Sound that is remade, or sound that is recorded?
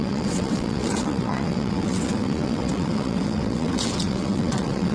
remade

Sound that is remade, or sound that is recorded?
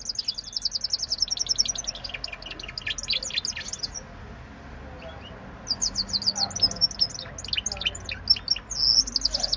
recorded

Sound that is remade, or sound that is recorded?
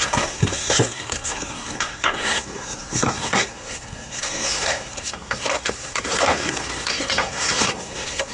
remade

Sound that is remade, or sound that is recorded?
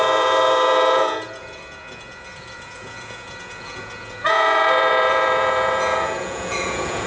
remade